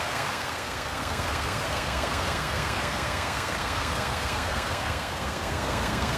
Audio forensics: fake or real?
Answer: fake